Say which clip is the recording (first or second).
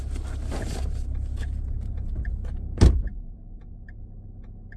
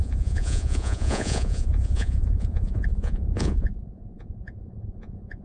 first